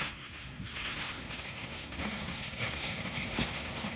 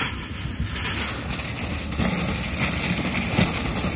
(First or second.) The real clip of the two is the second